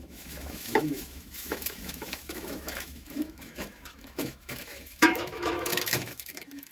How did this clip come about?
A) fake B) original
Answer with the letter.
A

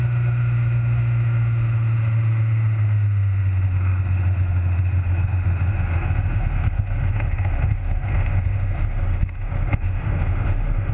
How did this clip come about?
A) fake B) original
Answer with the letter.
A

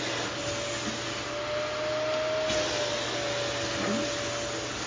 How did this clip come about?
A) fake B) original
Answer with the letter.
B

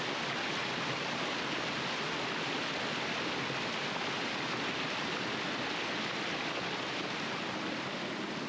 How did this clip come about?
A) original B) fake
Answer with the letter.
A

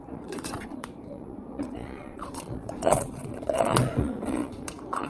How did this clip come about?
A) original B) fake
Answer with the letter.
B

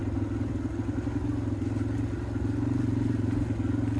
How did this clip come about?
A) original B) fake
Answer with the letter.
A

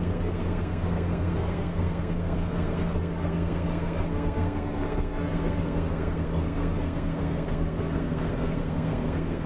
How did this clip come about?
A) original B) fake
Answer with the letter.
B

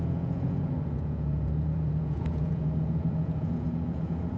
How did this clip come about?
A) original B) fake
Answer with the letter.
B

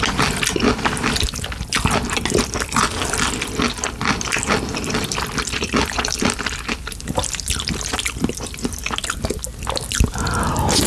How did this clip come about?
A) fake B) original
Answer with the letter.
B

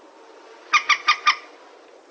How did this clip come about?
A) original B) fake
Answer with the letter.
A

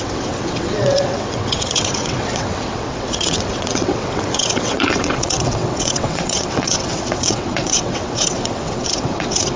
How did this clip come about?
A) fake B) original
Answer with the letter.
A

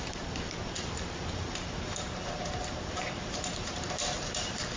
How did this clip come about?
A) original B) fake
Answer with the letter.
B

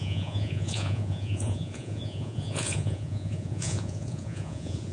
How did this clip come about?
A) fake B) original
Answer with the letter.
A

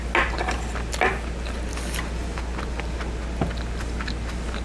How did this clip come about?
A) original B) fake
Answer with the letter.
A